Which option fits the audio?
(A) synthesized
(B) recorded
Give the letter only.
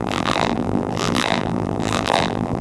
A